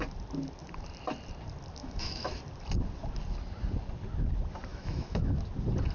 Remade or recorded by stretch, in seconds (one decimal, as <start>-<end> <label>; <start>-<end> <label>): 0.0-1.8 recorded; 1.8-2.4 remade; 2.4-4.7 recorded; 4.7-5.3 remade; 5.3-5.9 recorded